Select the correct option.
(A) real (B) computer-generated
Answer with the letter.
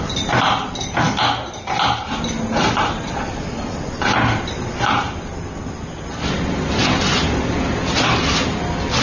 A